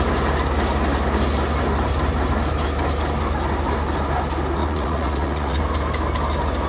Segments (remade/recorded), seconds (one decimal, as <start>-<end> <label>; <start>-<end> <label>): 0.0-4.6 recorded; 4.6-5.6 remade; 5.6-6.7 recorded